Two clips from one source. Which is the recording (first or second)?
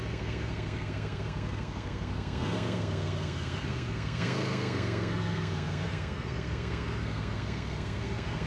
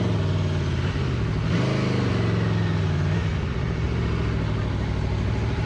second